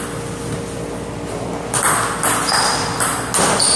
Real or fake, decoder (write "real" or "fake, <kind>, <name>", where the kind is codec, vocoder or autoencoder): real